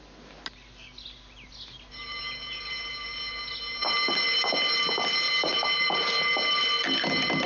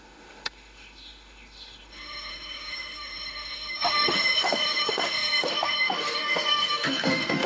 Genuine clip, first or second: first